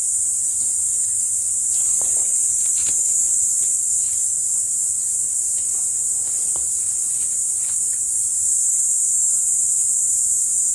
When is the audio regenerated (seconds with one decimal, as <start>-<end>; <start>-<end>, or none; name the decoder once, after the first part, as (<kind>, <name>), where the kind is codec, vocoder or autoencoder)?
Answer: 0.9-2.6 (vocoder, Vocos); 7.3-8.0